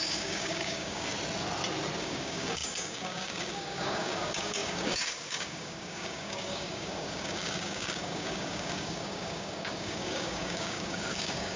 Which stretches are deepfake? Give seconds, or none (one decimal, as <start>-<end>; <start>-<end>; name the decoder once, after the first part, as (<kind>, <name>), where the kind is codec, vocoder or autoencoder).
0.0-1.1 (codec, DAC); 2.0-11.6

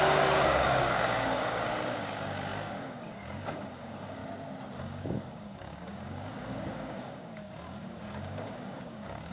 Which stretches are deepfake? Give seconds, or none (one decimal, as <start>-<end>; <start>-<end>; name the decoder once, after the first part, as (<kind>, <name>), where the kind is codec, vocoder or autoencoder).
0.0-4.2 (codec, DAC); 4.8-9.3

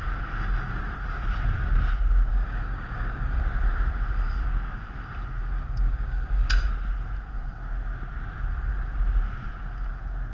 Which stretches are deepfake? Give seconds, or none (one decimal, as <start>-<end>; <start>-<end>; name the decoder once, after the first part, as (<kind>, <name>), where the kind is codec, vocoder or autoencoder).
2.3-3.4 (codec, DAC); 5.4-6.5

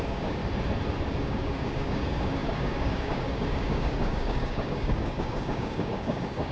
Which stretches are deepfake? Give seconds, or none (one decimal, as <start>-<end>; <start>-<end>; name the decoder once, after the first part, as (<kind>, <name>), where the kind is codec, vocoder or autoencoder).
0.0-0.4 (codec, DAC); 1.2-6.5

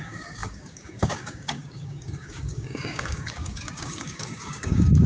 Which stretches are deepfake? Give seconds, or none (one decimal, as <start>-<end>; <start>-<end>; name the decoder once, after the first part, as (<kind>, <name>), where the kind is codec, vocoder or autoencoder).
0.0-5.1 (codec, DAC)

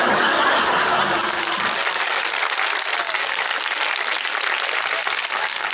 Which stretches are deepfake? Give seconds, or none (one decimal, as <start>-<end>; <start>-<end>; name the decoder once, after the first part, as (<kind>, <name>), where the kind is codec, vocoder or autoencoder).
0.0-0.9 (codec, DAC); 1.9-2.4; 3.0-3.5; 4.8-5.7

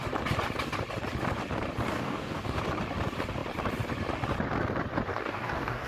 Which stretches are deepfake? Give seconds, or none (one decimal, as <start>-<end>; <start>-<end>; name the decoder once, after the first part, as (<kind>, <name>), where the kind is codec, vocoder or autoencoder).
1.9-2.6 (codec, DAC); 5.1-5.9

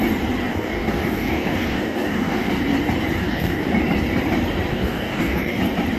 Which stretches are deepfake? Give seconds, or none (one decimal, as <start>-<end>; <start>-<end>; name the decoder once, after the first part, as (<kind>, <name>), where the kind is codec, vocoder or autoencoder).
0.5-2.6 (codec, DAC); 3.2-3.7; 4.7-5.6